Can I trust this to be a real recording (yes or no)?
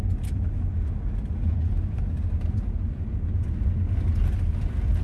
yes